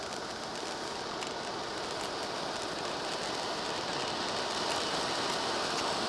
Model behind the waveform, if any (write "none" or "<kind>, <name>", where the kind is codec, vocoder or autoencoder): none